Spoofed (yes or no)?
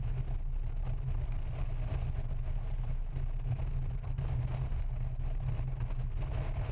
no